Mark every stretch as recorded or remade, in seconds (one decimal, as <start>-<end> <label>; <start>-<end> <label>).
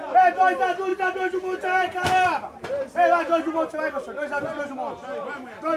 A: 0.0-0.9 recorded; 0.9-4.4 remade; 4.4-5.8 recorded